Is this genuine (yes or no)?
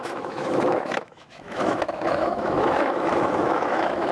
no